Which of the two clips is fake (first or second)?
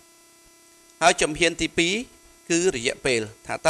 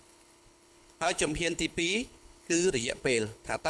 second